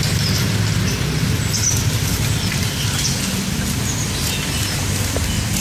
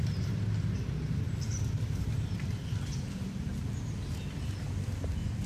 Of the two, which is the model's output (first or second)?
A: second